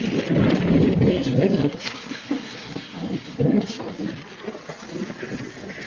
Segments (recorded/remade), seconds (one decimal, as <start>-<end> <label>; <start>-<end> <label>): 0.0-1.1 recorded; 1.1-3.8 remade; 3.8-5.9 recorded